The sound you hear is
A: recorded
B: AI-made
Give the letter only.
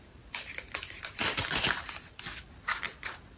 B